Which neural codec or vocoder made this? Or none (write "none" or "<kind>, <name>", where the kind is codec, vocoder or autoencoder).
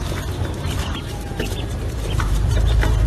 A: vocoder, BigVGAN v2